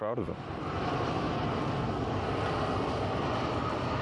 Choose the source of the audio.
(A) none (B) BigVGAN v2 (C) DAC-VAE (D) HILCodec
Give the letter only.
A